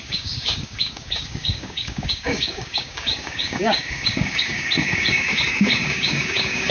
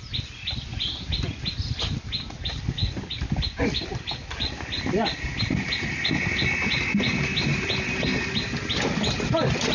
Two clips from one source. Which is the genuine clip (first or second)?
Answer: second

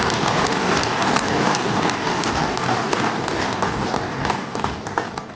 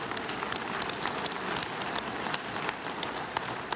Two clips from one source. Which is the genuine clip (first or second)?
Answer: second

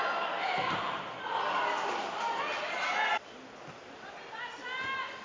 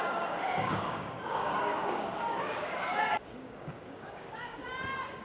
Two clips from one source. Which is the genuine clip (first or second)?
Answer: first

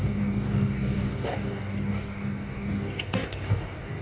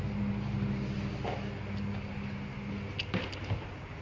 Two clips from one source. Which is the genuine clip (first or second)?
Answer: second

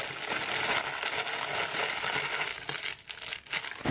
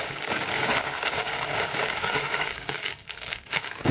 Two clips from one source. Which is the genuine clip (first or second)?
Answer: first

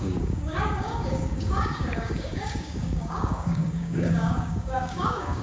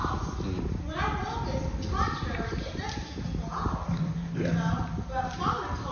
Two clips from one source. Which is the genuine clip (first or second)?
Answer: second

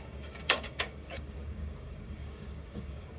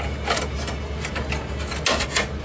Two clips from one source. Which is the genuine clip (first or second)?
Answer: second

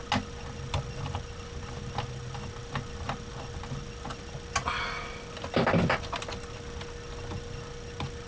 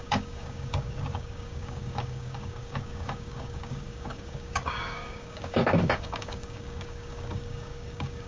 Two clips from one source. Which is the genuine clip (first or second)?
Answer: first